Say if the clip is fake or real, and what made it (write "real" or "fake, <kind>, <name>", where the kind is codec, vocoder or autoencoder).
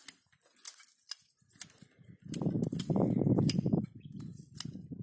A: real